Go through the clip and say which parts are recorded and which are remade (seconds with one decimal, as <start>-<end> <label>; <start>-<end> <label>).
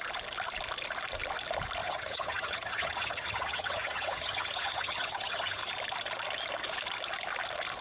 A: 0.0-1.8 recorded; 1.8-5.6 remade; 5.6-7.8 recorded